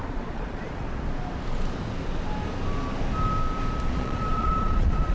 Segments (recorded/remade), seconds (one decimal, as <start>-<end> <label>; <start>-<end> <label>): 0.0-0.8 remade; 0.8-3.9 recorded; 3.9-5.1 remade